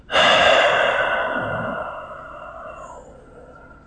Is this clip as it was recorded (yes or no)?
yes